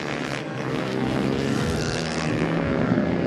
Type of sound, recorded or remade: remade